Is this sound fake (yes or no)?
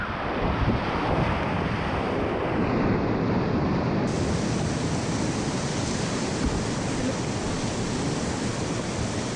no